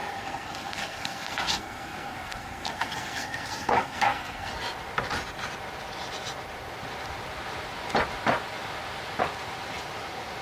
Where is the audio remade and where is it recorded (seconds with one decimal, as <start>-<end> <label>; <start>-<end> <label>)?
0.0-4.5 remade; 4.5-10.4 recorded